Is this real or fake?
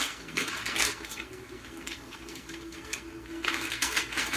fake